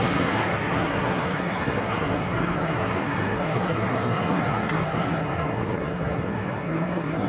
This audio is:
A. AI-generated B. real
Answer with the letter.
A